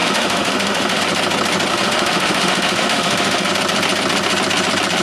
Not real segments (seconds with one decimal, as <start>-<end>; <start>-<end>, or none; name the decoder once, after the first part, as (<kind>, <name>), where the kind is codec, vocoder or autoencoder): 0.0-1.0 (autoencoder, DAC-VAE); 1.7-3.5